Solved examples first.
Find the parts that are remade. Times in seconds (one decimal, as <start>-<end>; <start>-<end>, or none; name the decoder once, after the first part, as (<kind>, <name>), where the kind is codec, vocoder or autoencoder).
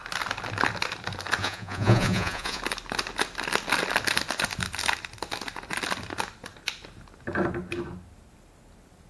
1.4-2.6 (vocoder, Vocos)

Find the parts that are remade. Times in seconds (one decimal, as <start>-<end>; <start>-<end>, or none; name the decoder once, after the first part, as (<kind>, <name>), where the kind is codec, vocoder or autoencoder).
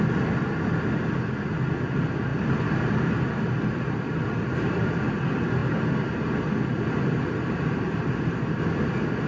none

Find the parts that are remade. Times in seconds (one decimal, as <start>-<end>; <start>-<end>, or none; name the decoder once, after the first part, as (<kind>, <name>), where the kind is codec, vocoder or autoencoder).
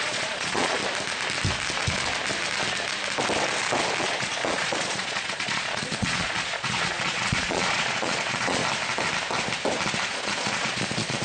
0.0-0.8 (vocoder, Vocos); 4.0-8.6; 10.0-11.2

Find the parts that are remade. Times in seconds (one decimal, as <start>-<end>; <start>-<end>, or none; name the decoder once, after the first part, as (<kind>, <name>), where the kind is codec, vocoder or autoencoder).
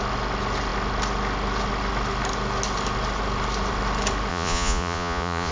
4.3-5.5 (vocoder, Vocos)